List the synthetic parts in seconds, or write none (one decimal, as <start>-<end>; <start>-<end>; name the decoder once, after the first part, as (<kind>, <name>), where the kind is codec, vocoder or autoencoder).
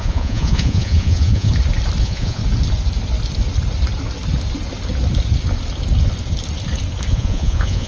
0.0-1.5 (vocoder, Vocos); 2.0-2.4; 7.1-7.9